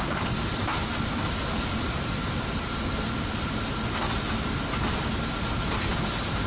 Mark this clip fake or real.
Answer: real